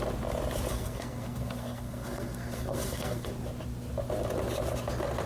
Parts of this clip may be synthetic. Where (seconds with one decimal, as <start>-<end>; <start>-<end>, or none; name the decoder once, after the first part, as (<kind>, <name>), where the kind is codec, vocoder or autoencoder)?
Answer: 0.7-3.3 (codec, SNAC)